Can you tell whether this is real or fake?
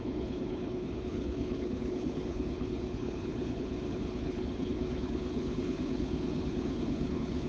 fake